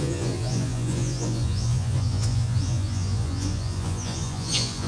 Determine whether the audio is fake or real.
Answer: fake